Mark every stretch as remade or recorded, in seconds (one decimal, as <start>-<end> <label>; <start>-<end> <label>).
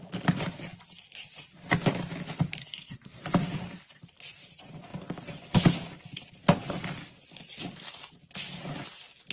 0.0-2.6 recorded; 2.6-3.2 remade; 3.2-9.3 recorded